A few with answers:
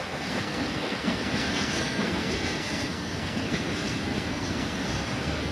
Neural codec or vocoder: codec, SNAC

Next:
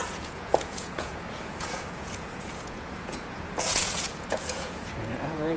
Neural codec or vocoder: vocoder, Vocos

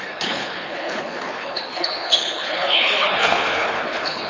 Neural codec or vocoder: codec, HILCodec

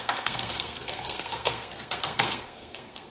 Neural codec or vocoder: codec, SNAC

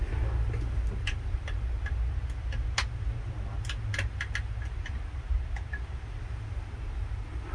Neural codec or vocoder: none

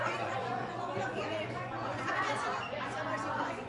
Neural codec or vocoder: vocoder, Vocos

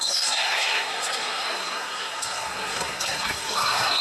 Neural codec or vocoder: codec, SNAC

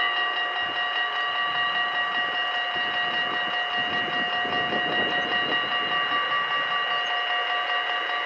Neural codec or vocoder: none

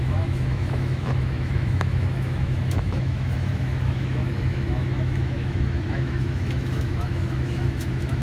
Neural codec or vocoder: autoencoder, DAC-VAE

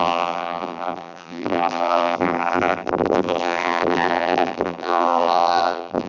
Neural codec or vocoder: vocoder, BigVGAN v2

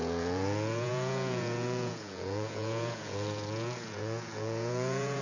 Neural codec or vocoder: vocoder, Vocos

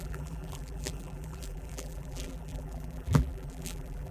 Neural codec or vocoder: vocoder, BigVGAN v2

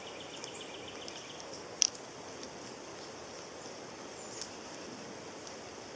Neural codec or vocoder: none